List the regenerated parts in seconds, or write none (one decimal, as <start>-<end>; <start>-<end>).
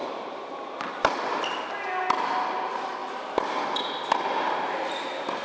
none